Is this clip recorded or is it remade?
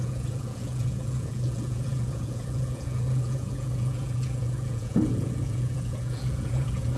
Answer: remade